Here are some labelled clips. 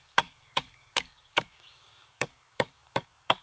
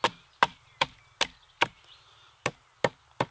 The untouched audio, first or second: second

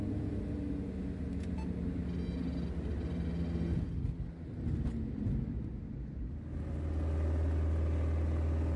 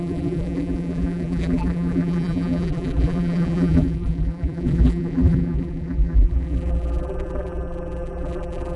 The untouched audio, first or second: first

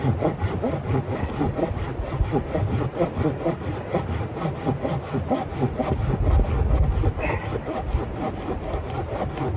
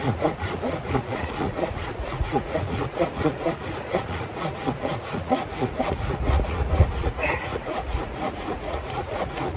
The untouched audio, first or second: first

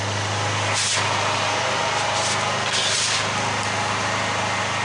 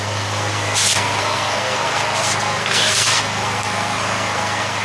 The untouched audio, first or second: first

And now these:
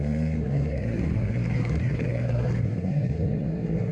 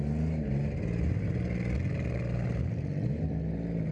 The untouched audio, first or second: second